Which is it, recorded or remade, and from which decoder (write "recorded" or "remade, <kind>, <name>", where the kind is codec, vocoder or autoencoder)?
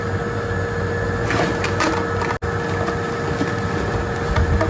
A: recorded